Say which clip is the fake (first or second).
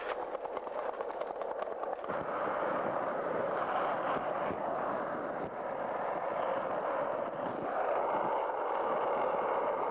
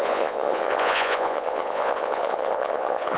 second